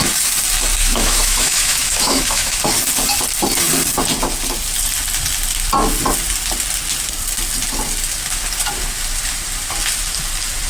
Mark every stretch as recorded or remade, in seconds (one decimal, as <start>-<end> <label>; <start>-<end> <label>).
0.0-0.8 recorded; 0.8-2.6 remade; 2.6-10.7 recorded